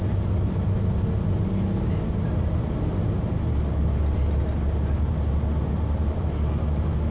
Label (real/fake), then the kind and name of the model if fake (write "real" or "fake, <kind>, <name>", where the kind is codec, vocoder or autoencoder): real